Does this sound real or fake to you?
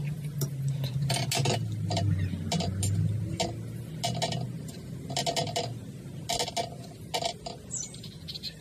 real